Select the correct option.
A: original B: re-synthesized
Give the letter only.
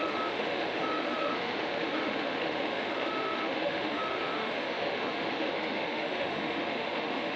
B